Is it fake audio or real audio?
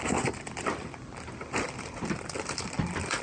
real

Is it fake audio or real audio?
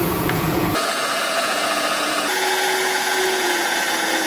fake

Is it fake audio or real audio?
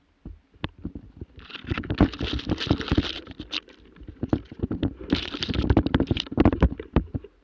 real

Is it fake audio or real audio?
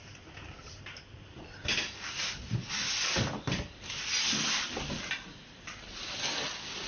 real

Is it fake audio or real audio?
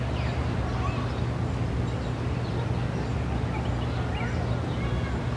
real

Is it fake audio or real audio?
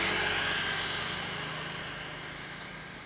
real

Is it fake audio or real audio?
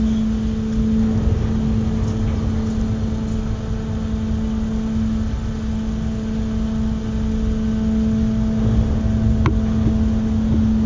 real